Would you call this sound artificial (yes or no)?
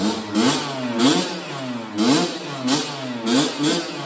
no